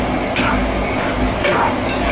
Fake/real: real